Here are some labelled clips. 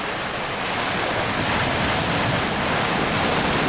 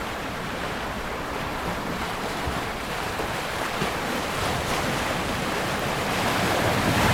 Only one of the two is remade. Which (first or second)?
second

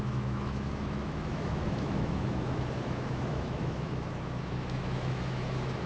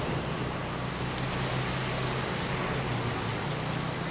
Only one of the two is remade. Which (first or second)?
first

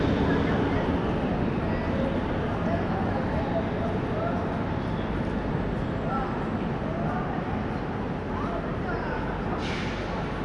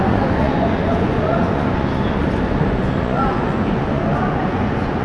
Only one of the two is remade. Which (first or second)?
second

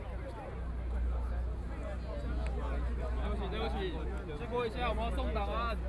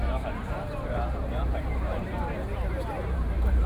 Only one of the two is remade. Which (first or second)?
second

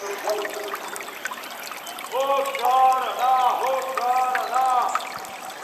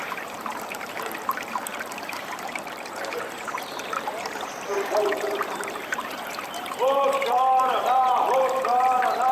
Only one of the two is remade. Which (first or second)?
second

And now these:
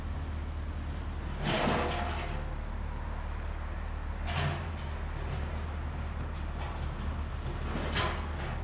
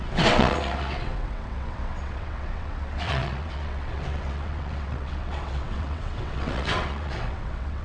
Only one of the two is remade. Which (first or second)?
second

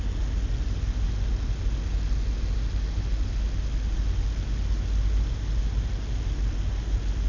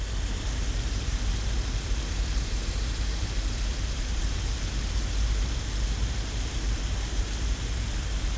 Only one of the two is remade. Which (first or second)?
second